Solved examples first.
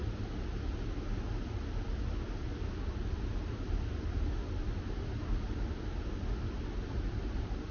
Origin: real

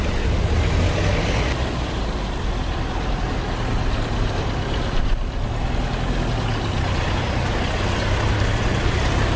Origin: real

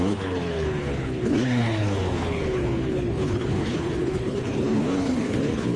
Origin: fake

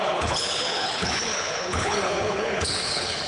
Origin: fake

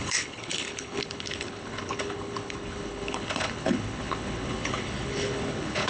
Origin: fake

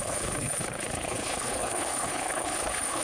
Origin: fake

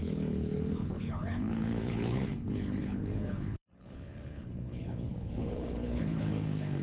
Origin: fake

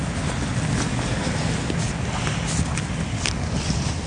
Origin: real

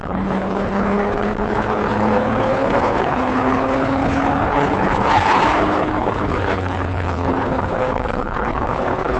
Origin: fake